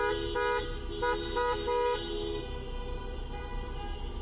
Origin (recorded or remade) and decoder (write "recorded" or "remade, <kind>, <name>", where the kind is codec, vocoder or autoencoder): recorded